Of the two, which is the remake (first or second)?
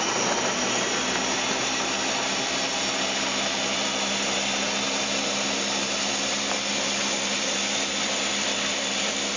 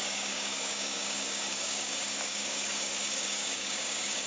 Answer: second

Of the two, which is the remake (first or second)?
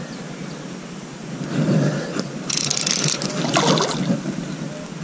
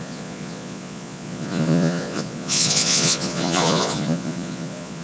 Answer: second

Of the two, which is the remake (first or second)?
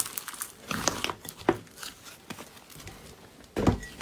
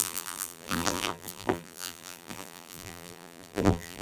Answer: second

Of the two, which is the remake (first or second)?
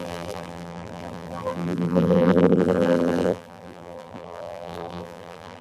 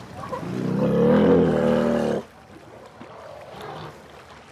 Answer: first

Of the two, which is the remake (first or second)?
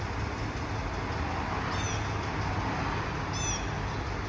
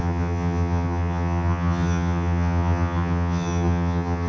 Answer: second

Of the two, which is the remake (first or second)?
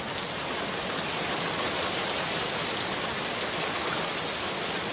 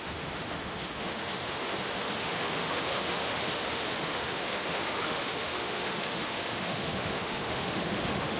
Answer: second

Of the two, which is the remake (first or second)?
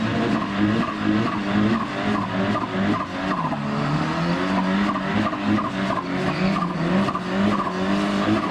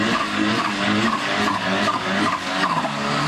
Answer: second